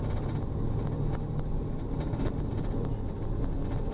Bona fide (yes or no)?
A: yes